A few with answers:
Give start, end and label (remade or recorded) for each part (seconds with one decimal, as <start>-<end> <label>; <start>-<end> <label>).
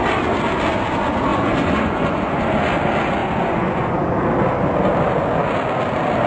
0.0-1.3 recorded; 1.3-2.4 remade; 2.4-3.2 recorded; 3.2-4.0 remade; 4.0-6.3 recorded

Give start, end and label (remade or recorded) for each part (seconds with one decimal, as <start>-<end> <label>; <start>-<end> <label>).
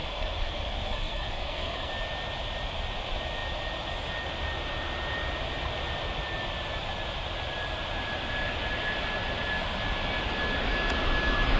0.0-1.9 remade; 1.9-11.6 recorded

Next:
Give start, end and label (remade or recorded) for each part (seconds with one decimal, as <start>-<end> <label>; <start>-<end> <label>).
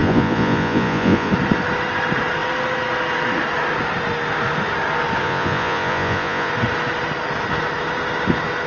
0.0-1.3 remade; 1.3-5.2 recorded; 5.2-6.5 remade; 6.5-8.7 recorded